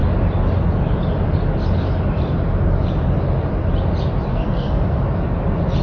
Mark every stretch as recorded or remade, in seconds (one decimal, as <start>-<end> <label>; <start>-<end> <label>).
0.0-4.3 recorded; 4.3-5.0 remade; 5.0-5.8 recorded

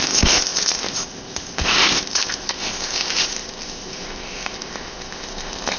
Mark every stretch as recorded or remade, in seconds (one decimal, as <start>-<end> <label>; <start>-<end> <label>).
0.0-5.8 remade